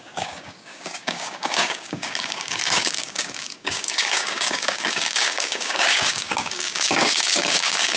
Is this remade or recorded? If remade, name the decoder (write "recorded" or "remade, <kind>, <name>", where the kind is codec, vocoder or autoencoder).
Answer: remade, codec, DAC